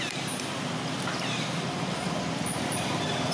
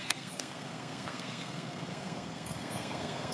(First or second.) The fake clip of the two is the second